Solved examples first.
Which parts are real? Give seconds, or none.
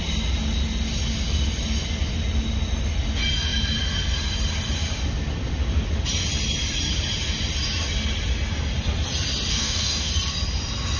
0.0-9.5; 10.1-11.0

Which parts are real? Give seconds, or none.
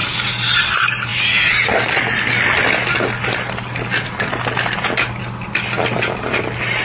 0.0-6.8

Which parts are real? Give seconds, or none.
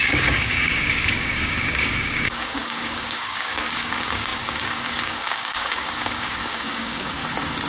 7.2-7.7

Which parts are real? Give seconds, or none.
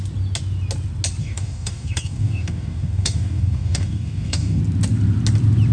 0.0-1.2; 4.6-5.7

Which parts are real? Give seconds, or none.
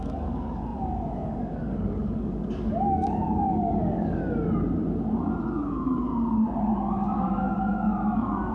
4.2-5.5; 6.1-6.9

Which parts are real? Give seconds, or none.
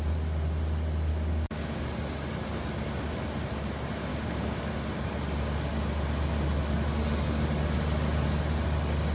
0.0-1.1; 1.8-4.1; 4.7-9.1